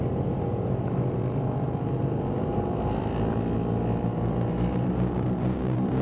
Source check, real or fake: fake